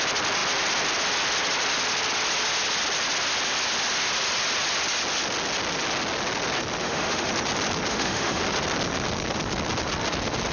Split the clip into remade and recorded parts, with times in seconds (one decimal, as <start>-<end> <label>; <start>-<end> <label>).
0.0-6.8 recorded; 6.8-7.3 remade; 7.3-7.9 recorded; 7.9-8.4 remade; 8.4-10.5 recorded